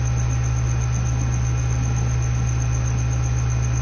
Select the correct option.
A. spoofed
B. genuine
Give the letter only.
B